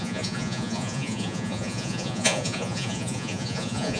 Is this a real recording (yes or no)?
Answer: no